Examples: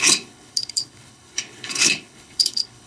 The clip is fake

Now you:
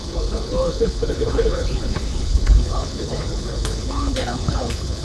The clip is fake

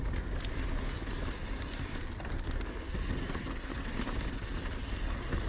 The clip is real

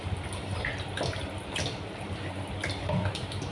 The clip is real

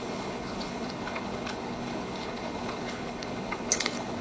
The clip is fake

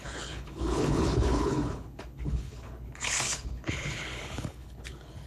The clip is fake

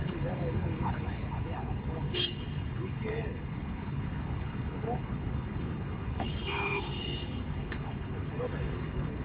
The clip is fake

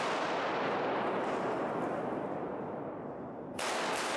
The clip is real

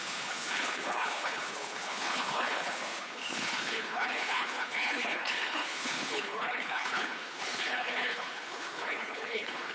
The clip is fake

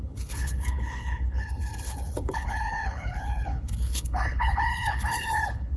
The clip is fake